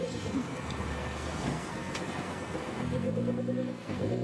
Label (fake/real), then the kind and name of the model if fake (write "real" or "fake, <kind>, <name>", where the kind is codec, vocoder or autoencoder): fake, codec, SNAC